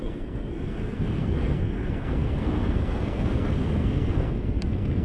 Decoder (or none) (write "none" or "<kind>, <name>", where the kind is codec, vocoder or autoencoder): codec, SNAC